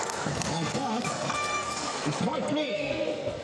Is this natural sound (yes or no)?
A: no